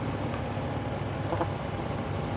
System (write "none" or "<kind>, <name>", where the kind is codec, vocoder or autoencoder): none